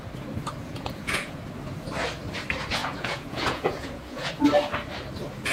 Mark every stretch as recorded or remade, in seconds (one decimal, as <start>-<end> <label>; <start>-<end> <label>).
0.0-0.6 recorded; 0.6-1.4 remade; 1.4-2.8 recorded; 2.8-4.3 remade; 4.3-5.5 recorded